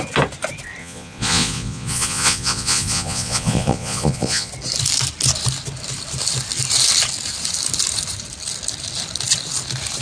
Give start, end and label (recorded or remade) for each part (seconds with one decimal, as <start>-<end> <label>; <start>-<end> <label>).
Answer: 0.0-0.8 recorded; 0.8-4.5 remade; 4.5-10.0 recorded